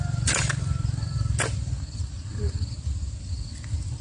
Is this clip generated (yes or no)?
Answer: no